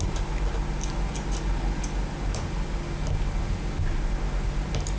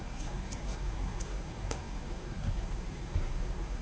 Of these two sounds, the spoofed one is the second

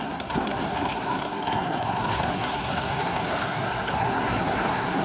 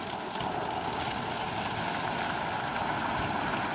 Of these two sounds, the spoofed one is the first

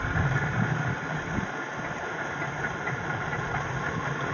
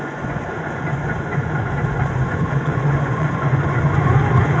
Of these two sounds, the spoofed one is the second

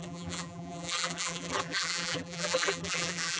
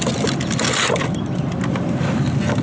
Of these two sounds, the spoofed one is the first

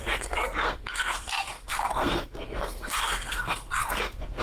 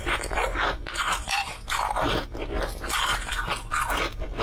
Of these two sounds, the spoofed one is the first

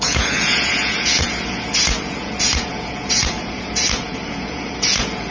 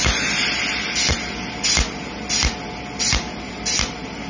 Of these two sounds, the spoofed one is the first